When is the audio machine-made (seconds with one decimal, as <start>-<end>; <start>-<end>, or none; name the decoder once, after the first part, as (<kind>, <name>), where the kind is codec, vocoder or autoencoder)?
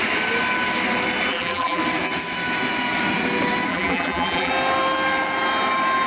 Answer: 1.3-1.8 (vocoder, BigVGAN v2); 3.7-4.5